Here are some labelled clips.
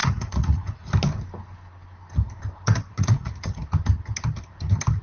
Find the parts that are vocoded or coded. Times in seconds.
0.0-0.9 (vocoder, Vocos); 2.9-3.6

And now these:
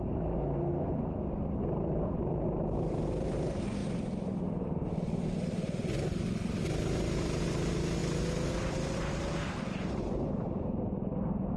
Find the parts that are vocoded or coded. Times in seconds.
none

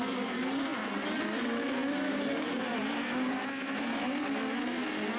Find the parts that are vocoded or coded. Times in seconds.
none

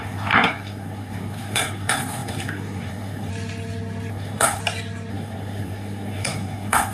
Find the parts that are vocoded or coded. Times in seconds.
0.0-3.3 (codec, SNAC); 4.1-4.6; 5.1-6.9

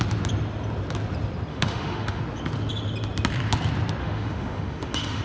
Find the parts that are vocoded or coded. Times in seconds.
1.5-2.2 (autoencoder, DAC-VAE); 4.0-5.2

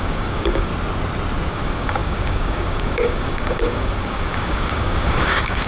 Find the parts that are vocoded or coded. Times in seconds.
0.0-0.7 (codec, DAC); 1.5-5.7

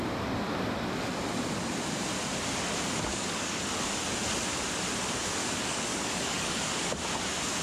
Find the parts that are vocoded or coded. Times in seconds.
3.1-3.6 (codec, DAC); 5.4-6.9

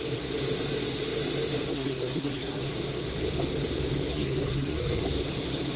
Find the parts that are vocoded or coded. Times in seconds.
1.7-2.6 (codec, SNAC); 4.1-5.0